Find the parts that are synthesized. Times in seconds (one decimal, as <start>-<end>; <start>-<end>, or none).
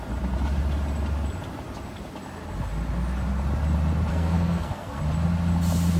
4.1-5.0